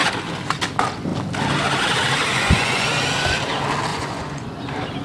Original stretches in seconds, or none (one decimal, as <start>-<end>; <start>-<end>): 0.0-2.3; 3.0-3.9; 4.6-5.0